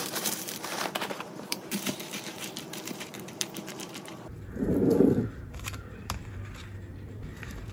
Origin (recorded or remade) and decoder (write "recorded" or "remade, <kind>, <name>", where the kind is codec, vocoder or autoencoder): remade, vocoder, BigVGAN v2